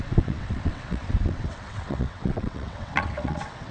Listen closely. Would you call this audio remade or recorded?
remade